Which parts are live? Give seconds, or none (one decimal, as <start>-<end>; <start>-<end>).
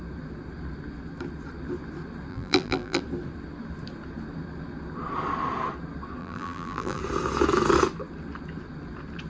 0.0-2.3; 3.0-6.2; 7.0-9.3